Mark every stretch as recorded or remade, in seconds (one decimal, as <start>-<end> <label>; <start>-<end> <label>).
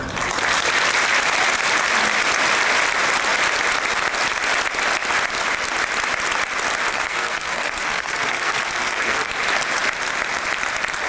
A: 0.0-6.9 recorded; 6.9-9.3 remade; 9.3-11.1 recorded